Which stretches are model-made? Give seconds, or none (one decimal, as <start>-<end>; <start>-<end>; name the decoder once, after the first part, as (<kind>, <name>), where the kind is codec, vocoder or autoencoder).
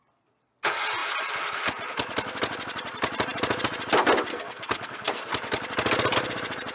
4.3-5.3 (codec, SNAC)